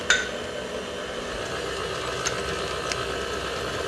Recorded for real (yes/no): yes